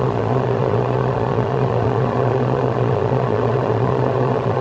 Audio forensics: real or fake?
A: fake